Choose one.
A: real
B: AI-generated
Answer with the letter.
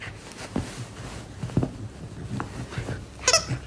A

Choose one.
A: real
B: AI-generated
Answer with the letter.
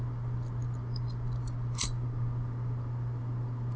A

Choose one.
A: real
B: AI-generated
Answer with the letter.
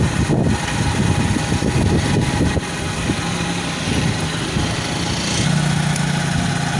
A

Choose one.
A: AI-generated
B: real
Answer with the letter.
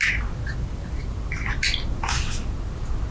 B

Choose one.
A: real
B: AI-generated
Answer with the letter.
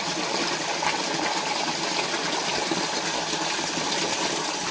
A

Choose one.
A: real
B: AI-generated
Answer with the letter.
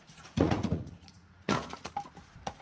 B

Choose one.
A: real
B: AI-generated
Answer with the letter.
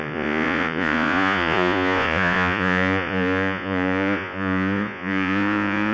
B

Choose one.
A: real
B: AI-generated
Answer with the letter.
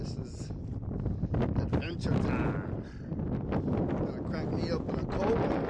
A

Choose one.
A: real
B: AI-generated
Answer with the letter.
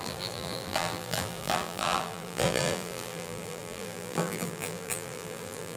B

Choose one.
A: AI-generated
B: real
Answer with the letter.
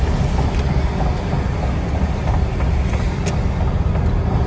B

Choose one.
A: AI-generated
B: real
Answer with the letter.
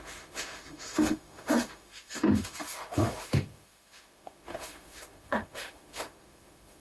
A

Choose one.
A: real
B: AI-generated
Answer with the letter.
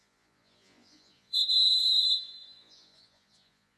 B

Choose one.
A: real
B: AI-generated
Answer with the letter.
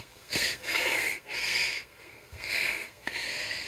B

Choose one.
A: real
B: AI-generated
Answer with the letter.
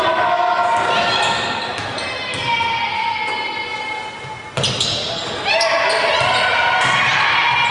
A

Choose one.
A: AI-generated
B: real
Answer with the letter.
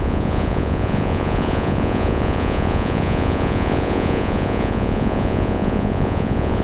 A